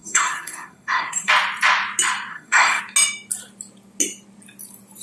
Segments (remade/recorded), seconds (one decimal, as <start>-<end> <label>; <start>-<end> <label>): 0.0-1.3 remade; 1.3-2.3 recorded; 2.3-2.8 remade; 2.8-5.0 recorded